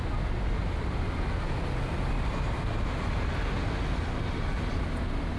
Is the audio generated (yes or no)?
no